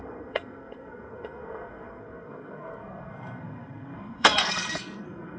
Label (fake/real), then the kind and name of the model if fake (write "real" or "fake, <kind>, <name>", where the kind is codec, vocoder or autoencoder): fake, codec, SNAC